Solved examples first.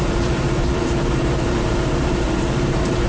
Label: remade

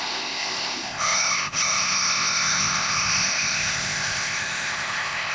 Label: remade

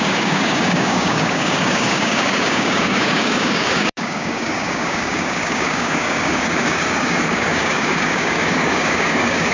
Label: remade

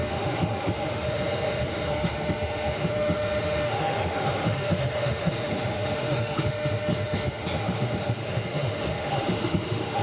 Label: remade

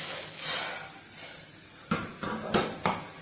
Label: recorded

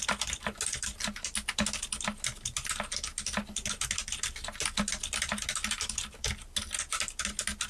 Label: recorded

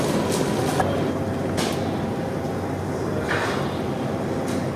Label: recorded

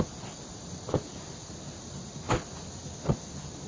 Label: recorded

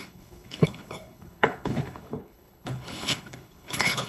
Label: remade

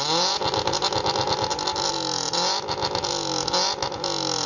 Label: recorded